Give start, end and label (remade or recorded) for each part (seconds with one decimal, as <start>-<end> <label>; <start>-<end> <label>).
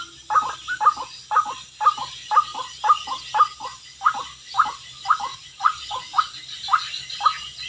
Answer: 0.0-5.3 recorded; 5.3-6.2 remade; 6.2-7.7 recorded